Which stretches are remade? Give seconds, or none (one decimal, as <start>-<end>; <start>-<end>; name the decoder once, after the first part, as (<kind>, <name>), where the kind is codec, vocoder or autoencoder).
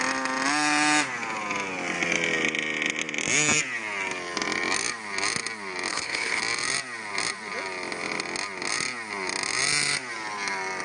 5.9-6.4 (codec, HILCodec)